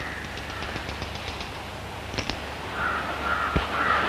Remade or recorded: recorded